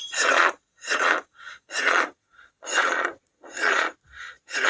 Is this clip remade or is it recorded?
remade